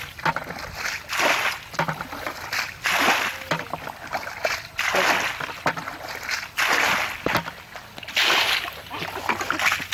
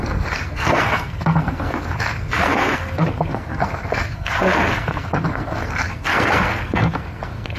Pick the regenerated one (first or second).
second